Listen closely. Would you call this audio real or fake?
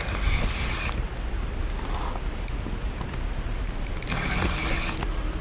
real